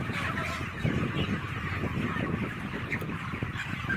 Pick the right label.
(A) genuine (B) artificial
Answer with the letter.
A